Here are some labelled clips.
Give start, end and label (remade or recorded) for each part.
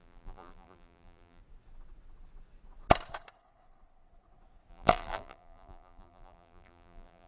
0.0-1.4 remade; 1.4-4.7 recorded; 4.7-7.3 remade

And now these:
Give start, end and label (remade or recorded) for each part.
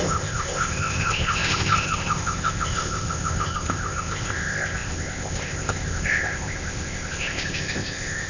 0.0-8.3 remade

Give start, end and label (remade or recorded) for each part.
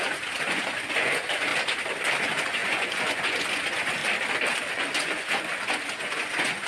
0.0-1.5 remade; 1.5-2.2 recorded; 2.2-4.0 remade; 4.0-4.7 recorded; 4.7-6.7 remade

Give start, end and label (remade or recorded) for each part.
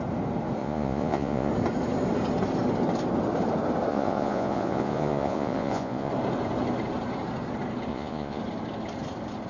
0.0-0.6 recorded; 0.6-1.5 remade; 1.5-3.9 recorded; 3.9-6.1 remade; 6.1-7.9 recorded; 7.9-8.4 remade; 8.4-9.5 recorded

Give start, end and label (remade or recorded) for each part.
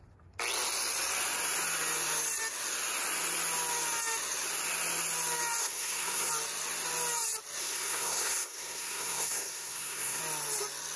0.0-5.6 recorded; 5.6-6.3 remade; 6.3-7.6 recorded; 7.6-10.2 remade; 10.2-11.0 recorded